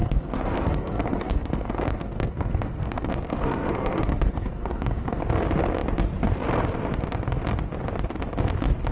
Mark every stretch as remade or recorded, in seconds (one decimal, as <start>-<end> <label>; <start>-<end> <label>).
0.0-5.2 remade; 5.2-8.9 recorded